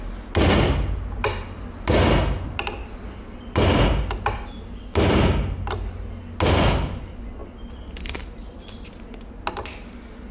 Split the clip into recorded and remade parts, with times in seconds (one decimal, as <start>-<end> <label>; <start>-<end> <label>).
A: 0.0-10.3 recorded